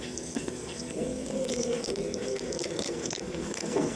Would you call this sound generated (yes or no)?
yes